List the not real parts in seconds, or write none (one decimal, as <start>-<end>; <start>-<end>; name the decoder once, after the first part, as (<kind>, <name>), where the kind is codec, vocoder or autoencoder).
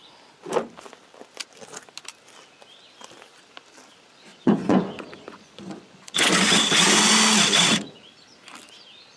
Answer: 4.3-6.6 (vocoder, Vocos)